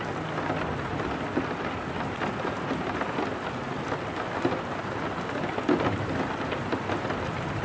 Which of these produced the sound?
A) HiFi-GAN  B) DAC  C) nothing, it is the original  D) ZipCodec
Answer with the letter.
C